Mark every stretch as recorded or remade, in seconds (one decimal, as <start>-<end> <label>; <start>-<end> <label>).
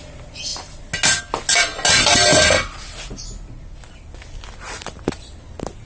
0.0-5.9 recorded